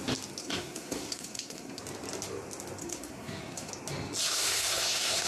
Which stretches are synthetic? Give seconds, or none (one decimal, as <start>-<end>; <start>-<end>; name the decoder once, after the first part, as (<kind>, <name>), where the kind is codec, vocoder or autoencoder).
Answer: 0.4-1.8 (codec, SNAC); 2.8-3.7; 4.3-5.3

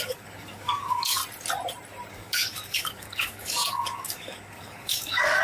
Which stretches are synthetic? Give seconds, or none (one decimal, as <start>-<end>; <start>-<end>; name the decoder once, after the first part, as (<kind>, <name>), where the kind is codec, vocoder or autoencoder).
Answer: 0.0-1.2 (codec, DAC); 2.1-5.4

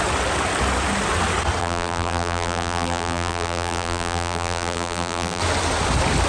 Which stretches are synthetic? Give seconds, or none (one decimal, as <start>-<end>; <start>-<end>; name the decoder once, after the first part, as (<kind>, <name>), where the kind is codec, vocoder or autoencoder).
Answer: 1.6-5.4 (vocoder, BigVGAN v2)